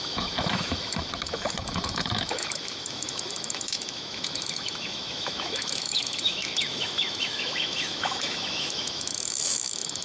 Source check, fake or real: fake